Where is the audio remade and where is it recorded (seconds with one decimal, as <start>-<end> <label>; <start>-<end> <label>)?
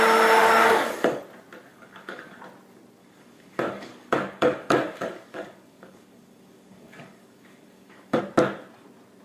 0.0-0.4 recorded; 0.4-1.2 remade; 1.2-1.7 recorded; 1.7-2.4 remade; 2.4-3.0 recorded; 3.0-8.2 remade; 8.2-9.2 recorded